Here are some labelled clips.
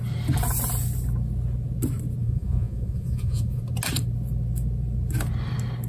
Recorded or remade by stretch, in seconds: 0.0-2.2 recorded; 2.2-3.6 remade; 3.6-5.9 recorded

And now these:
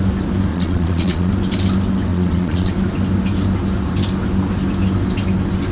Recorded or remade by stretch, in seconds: 0.0-0.5 recorded; 0.5-1.3 remade; 1.3-2.1 recorded; 2.1-2.7 remade; 2.7-5.7 recorded

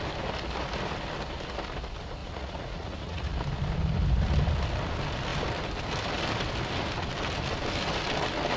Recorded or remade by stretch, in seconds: 0.0-2.2 recorded; 2.2-3.3 remade; 3.3-8.6 recorded

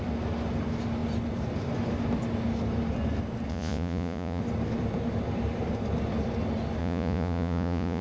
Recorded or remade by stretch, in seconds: 0.0-3.5 recorded; 3.5-4.4 remade; 4.4-6.8 recorded; 6.8-8.0 remade

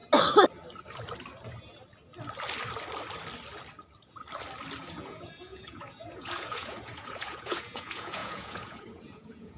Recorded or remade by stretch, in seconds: 0.0-4.8 recorded; 4.8-9.6 remade

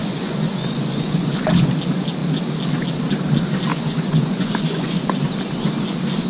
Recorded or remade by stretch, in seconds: 0.0-1.7 remade; 1.7-3.7 recorded; 3.7-5.0 remade; 5.0-6.3 recorded

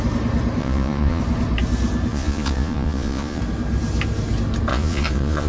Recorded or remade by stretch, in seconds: 0.0-0.6 recorded; 0.6-1.2 remade; 1.2-2.1 recorded; 2.1-3.4 remade; 3.4-4.7 recorded; 4.7-5.5 remade

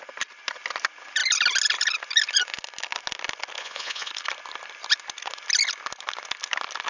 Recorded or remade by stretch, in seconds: 0.0-3.6 recorded; 3.6-4.1 remade; 4.1-6.9 recorded